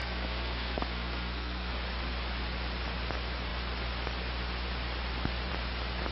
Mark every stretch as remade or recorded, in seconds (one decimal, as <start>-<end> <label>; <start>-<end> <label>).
0.0-1.7 remade; 1.7-6.1 recorded